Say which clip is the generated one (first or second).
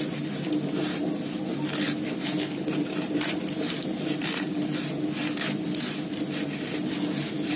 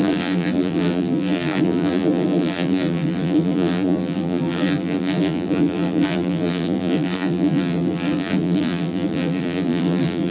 second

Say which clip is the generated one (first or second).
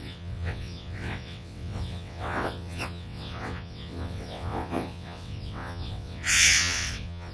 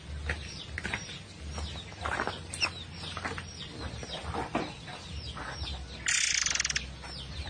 first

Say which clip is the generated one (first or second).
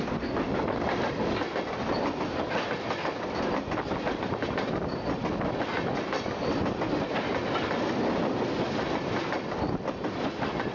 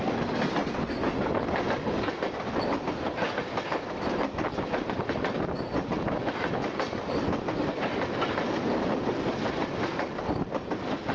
second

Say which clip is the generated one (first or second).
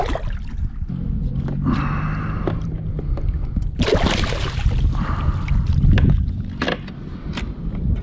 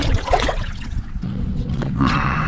second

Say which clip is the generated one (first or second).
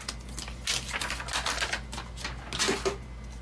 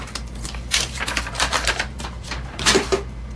second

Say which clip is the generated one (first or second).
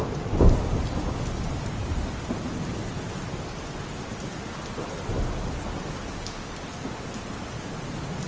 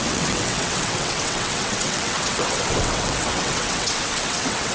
second